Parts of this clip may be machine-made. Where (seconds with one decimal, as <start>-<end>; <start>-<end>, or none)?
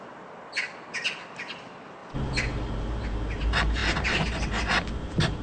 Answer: none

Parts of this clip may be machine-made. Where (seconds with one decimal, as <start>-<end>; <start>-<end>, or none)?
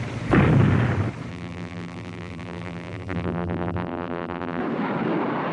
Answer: 1.3-4.6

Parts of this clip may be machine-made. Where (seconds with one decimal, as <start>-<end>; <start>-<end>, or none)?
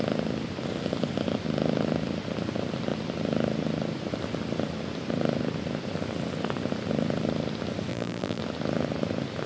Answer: 7.9-8.4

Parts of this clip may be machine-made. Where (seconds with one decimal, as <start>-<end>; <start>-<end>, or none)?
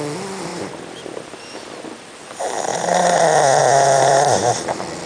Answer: 0.5-1.1; 2.7-3.2; 3.6-4.5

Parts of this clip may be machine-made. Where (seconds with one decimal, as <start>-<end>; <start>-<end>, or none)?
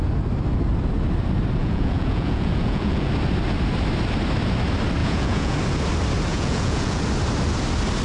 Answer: 1.6-3.1; 5.0-5.6; 6.3-7.0